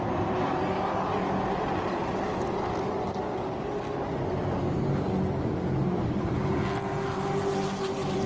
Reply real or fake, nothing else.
real